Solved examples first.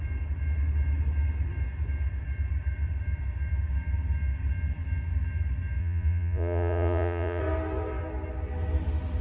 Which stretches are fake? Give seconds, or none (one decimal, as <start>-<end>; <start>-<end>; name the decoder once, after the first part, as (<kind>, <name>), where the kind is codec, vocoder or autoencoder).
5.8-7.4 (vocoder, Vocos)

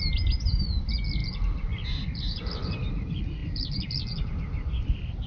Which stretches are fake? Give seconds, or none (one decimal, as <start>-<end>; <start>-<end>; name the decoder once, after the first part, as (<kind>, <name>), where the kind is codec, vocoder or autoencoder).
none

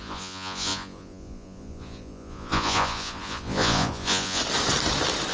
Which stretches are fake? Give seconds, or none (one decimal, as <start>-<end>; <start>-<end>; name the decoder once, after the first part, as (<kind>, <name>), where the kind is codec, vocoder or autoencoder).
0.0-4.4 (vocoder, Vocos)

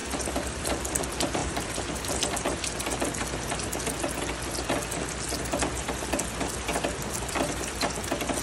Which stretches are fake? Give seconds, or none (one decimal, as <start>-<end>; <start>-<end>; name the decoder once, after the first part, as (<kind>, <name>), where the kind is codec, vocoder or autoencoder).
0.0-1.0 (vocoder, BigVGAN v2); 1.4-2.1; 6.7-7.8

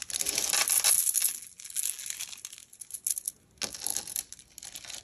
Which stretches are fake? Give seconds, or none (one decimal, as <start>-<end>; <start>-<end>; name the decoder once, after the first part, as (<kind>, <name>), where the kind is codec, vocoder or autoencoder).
1.2-2.0 (vocoder, BigVGAN v2)